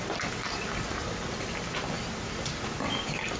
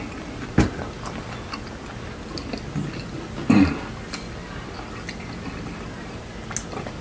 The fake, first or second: first